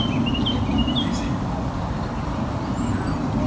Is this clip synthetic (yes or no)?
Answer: no